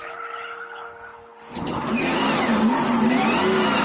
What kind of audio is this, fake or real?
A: real